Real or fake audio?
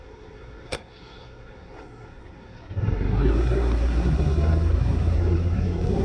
fake